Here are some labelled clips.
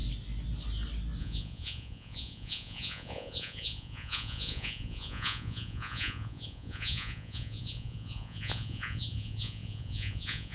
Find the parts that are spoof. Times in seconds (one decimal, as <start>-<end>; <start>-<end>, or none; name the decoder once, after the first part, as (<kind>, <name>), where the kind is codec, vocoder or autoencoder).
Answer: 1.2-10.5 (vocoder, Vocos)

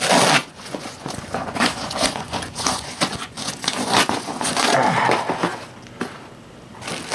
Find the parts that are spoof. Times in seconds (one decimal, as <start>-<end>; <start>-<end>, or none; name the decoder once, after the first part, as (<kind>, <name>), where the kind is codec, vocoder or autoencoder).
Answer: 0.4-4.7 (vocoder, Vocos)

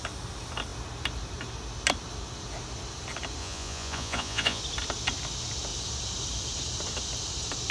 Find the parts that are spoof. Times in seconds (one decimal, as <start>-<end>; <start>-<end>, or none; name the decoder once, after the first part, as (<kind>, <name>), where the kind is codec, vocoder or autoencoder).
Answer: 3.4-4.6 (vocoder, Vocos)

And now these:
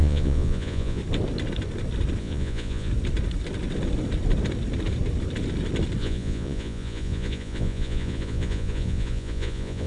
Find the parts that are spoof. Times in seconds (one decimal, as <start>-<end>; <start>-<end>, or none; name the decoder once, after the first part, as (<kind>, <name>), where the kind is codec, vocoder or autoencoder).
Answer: 0.0-1.0 (vocoder, Vocos); 2.2-2.9; 6.0-9.9

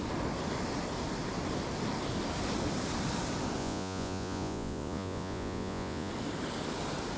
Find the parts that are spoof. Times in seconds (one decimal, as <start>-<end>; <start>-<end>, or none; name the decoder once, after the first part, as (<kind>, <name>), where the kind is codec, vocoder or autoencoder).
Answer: 3.6-6.1 (vocoder, Vocos)

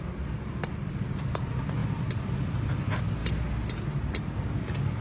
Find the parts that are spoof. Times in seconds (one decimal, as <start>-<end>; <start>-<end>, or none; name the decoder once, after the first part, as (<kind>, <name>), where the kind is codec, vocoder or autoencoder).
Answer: none